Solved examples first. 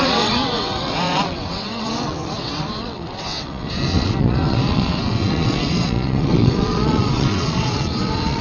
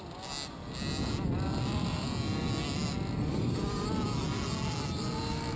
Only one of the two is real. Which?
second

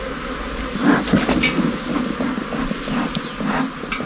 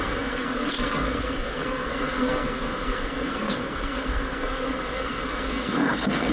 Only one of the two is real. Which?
first